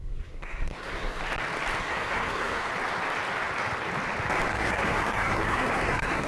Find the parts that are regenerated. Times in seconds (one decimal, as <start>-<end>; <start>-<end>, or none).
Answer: 0.0-1.2; 1.8-2.7; 4.5-6.3